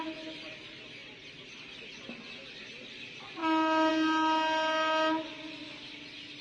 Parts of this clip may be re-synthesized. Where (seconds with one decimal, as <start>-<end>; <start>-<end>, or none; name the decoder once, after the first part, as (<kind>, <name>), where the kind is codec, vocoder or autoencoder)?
none